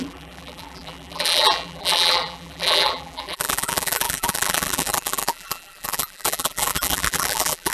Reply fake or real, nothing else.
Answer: fake